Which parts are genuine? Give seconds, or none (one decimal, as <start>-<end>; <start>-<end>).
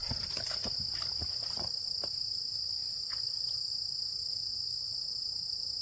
0.0-5.8